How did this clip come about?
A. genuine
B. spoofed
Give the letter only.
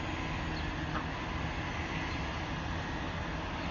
A